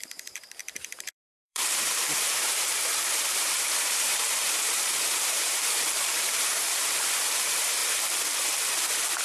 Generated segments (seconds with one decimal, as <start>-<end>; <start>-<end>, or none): 0.0-7.8